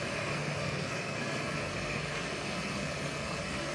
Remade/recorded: remade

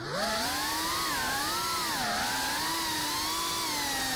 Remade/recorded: recorded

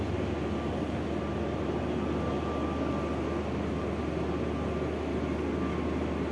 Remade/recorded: recorded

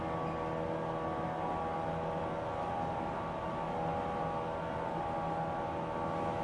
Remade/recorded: recorded